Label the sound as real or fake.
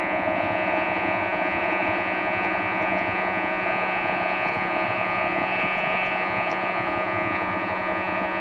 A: fake